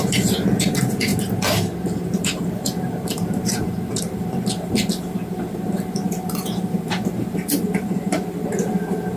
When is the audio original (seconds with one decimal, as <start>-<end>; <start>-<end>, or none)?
1.1-2.1